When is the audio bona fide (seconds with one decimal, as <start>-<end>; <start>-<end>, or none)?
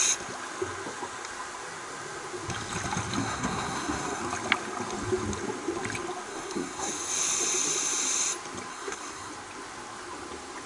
0.0-3.2; 4.2-6.3; 6.9-8.7; 9.3-10.7